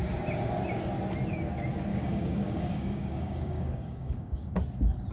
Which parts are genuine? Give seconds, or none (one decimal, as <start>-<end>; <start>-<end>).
0.0-1.9; 4.5-5.1